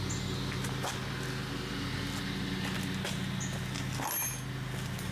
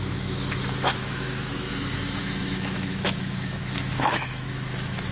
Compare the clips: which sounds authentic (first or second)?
first